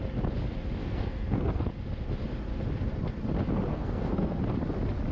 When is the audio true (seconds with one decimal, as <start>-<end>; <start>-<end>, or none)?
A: 0.0-0.8; 1.6-3.7; 4.4-5.1